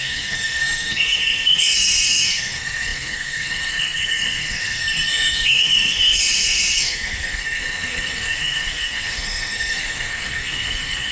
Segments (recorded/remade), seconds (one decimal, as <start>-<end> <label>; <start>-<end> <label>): 0.0-11.1 remade